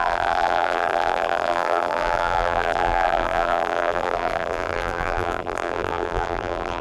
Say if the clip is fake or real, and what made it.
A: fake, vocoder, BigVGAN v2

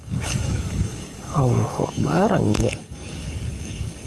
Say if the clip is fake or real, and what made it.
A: fake, codec, DAC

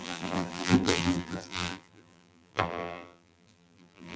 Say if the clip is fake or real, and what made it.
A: fake, vocoder, BigVGAN v2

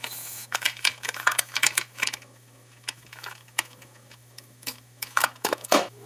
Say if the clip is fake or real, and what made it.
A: fake, autoencoder, DAC-VAE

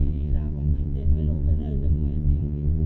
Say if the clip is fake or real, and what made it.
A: fake, vocoder, Vocos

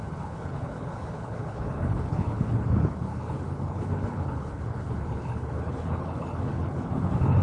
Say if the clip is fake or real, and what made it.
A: fake, codec, HILCodec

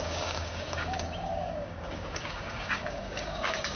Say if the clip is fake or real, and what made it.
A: fake, codec, DAC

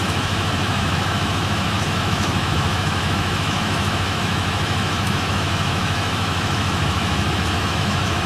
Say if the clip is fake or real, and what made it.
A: fake, autoencoder, DAC-VAE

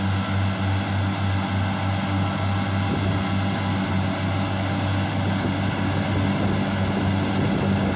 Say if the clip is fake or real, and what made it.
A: real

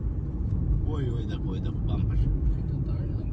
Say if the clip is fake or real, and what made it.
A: fake, vocoder, BigVGAN v2